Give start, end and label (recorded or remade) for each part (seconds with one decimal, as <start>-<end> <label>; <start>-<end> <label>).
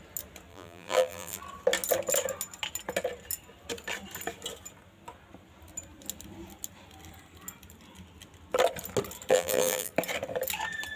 0.0-0.5 recorded; 0.5-1.4 remade; 1.4-9.3 recorded; 9.3-9.9 remade; 9.9-11.0 recorded